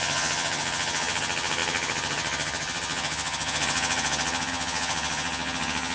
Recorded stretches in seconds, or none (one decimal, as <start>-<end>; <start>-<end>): none